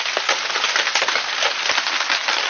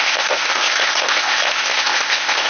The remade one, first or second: second